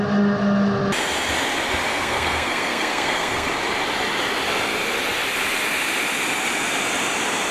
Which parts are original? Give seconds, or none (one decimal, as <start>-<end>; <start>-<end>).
0.0-1.9; 3.5-7.5